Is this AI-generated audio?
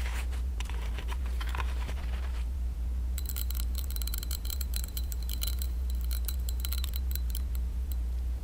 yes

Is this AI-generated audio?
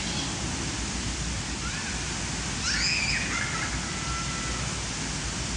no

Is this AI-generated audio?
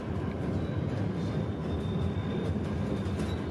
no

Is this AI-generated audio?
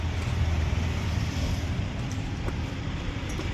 yes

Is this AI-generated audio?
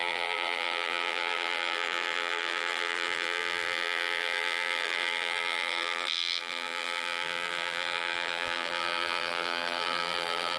yes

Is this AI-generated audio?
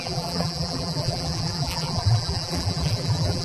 yes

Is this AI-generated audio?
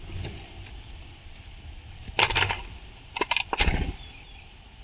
yes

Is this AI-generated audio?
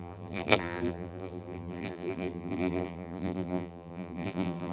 yes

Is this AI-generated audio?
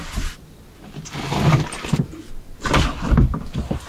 no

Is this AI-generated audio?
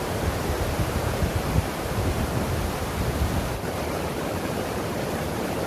yes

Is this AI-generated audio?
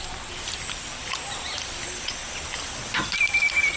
no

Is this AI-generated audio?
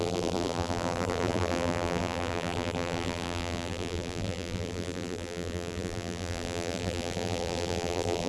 yes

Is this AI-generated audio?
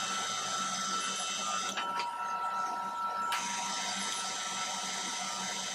no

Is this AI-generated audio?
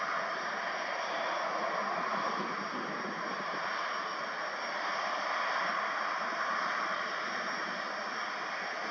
no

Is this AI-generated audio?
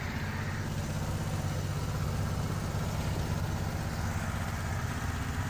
no